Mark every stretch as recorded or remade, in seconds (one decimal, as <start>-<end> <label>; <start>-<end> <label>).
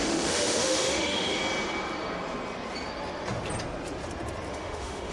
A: 0.0-1.4 remade; 1.4-4.5 recorded; 4.5-5.1 remade